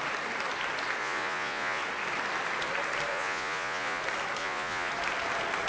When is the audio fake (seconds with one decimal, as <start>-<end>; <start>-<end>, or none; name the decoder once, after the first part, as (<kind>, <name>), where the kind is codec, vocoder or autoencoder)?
1.0-1.8 (vocoder, Vocos); 3.1-4.0; 4.4-4.9